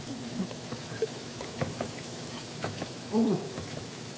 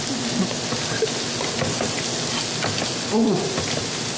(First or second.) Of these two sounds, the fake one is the first